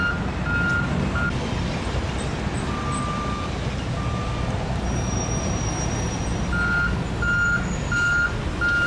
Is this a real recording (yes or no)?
yes